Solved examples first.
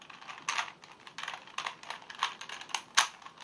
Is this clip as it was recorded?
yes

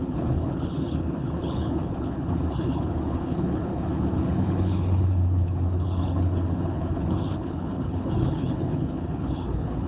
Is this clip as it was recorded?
no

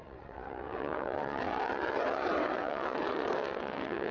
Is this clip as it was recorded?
no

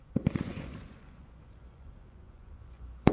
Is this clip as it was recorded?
no